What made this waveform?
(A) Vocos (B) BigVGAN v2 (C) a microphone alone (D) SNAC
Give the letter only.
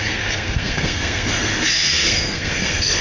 D